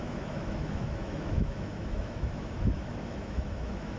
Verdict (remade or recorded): remade